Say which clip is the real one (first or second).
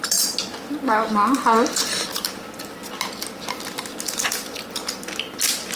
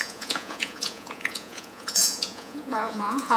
first